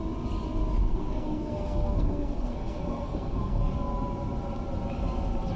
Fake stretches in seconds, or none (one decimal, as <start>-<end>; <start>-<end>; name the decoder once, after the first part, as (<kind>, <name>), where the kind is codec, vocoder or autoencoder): 0.8-3.7 (codec, SNAC)